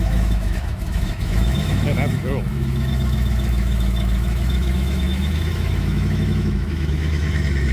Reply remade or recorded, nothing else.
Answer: remade